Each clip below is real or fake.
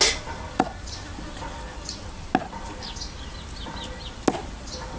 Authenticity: real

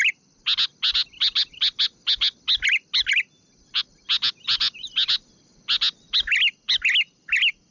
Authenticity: real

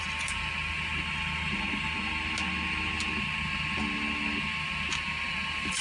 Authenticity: real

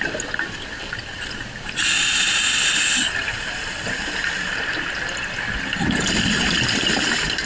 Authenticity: real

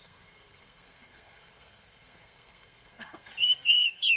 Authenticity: fake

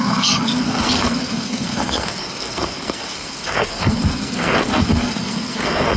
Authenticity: fake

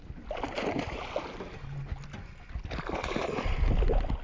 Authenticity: real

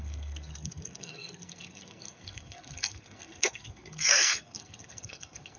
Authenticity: fake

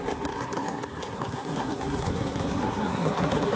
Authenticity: fake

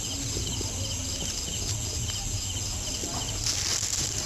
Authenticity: real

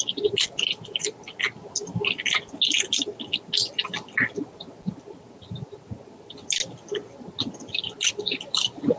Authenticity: real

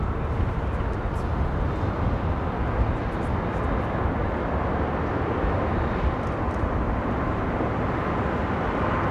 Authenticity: real